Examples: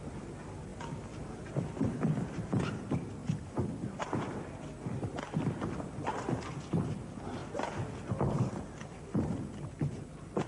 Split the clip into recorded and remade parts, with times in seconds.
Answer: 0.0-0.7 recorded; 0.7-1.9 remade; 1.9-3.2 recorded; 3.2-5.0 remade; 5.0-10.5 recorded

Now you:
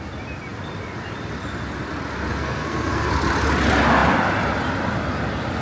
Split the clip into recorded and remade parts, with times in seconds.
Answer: 0.0-2.3 recorded; 2.3-3.1 remade; 3.1-5.6 recorded